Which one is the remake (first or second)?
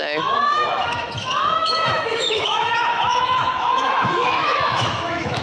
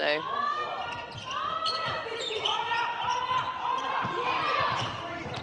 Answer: first